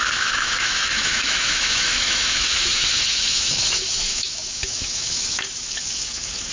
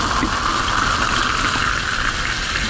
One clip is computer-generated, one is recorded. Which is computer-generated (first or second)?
first